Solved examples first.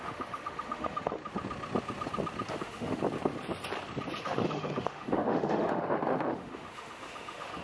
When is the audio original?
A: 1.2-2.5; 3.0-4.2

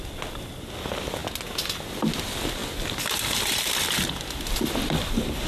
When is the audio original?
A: 0.0-5.5

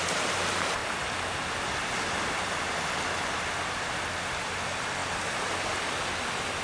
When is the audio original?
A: 0.0-5.0